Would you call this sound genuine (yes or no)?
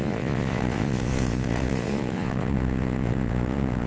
no